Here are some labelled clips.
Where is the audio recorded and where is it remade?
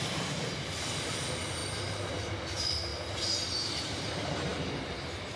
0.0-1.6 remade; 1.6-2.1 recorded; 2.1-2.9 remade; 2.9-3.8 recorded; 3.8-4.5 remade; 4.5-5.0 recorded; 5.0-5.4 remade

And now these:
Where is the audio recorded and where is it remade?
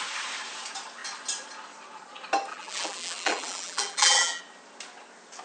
0.0-2.5 recorded; 2.5-4.4 remade; 4.4-5.4 recorded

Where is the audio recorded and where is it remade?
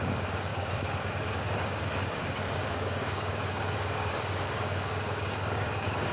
0.0-6.1 remade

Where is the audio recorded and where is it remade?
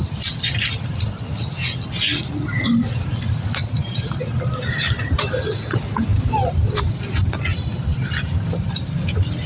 0.0-2.1 recorded; 2.1-4.1 remade; 4.1-6.1 recorded; 6.1-6.8 remade; 6.8-7.5 recorded; 7.5-8.7 remade; 8.7-9.5 recorded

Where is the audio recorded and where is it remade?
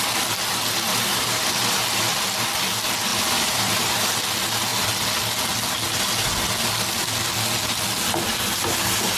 0.0-0.9 recorded; 0.9-2.1 remade; 2.1-3.1 recorded; 3.1-4.2 remade; 4.2-9.2 recorded